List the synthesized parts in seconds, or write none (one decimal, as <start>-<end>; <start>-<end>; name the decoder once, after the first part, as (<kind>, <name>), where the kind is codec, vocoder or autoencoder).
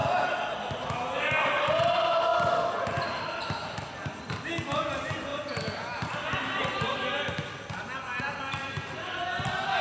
none